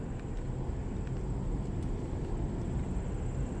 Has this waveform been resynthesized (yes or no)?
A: no